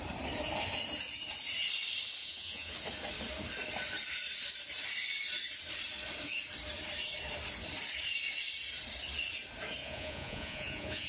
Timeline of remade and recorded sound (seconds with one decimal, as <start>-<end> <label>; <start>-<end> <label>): 0.0-2.2 recorded; 2.2-2.7 remade; 2.7-9.8 recorded; 9.8-11.1 remade